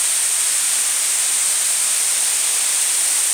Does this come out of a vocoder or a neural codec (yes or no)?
no